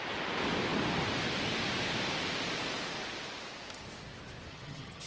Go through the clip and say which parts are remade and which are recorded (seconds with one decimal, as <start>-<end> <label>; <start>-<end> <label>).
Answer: 0.0-4.5 recorded; 4.5-5.1 remade